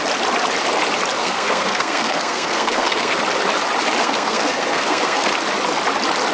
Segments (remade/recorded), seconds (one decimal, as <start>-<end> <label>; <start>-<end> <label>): 0.0-1.2 recorded; 1.2-3.2 remade; 3.2-4.0 recorded; 4.0-5.3 remade; 5.3-6.3 recorded

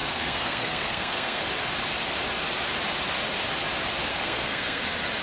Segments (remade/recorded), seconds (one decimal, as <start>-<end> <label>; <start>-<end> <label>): 0.0-1.4 remade; 1.4-4.1 recorded; 4.1-4.8 remade; 4.8-5.2 recorded

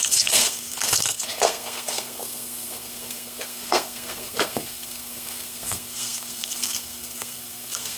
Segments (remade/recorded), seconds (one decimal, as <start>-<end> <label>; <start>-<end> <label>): 0.0-8.0 remade